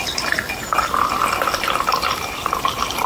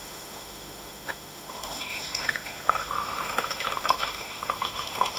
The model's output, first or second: second